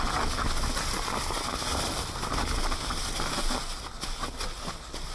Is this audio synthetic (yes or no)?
no